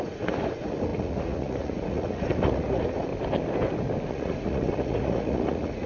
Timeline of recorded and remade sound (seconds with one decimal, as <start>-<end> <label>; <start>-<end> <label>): 0.0-3.1 remade; 3.1-4.1 recorded; 4.1-5.9 remade